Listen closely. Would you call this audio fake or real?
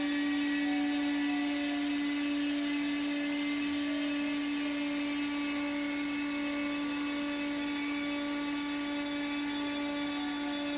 real